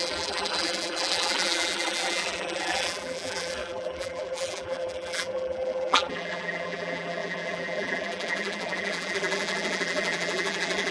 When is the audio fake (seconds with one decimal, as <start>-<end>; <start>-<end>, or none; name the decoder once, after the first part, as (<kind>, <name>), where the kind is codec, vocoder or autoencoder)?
0.0-10.9 (vocoder, BigVGAN v2)

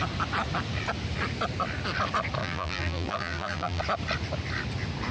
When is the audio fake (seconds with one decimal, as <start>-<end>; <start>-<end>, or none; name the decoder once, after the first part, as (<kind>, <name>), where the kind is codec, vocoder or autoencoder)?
2.4-3.8 (vocoder, BigVGAN v2)

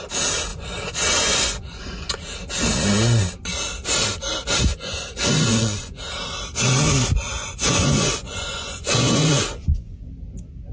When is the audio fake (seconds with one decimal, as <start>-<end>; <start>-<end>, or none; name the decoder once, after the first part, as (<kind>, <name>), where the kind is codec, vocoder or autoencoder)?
0.5-2.1 (vocoder, Vocos); 4.7-6.0; 7.4-10.1